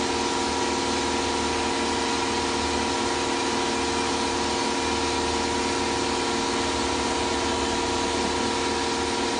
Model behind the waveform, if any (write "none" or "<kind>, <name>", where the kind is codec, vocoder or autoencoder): none